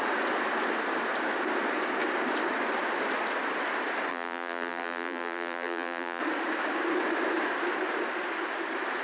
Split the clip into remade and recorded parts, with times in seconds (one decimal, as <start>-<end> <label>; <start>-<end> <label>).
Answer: 0.0-4.1 recorded; 4.1-6.2 remade; 6.2-9.0 recorded